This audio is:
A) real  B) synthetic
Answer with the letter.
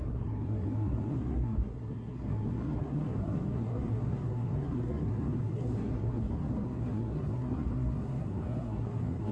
B